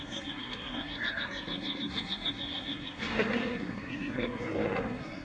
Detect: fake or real fake